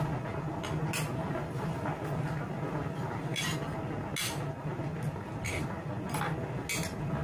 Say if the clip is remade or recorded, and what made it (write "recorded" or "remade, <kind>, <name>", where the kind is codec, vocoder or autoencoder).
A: recorded